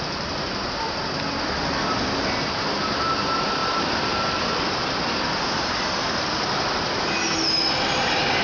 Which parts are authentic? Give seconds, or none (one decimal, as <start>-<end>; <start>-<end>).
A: 0.0-8.4